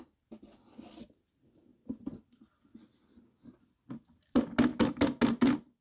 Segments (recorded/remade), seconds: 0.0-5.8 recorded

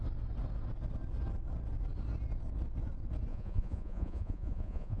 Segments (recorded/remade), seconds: 0.0-3.3 recorded; 3.3-5.0 remade

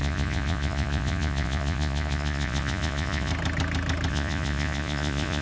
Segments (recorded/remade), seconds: 0.0-3.3 remade; 3.3-4.1 recorded; 4.1-5.4 remade

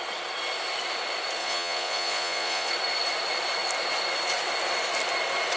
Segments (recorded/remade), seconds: 0.0-1.4 recorded; 1.4-2.7 remade; 2.7-5.6 recorded